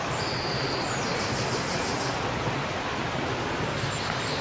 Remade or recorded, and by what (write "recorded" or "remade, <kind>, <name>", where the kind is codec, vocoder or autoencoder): recorded